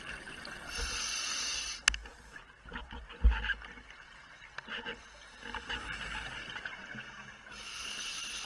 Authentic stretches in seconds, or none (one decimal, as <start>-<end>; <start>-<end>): 0.0-8.5